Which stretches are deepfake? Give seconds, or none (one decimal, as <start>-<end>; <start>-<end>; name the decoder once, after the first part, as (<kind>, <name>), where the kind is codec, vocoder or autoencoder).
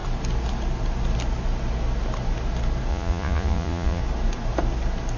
2.9-4.0 (vocoder, Vocos)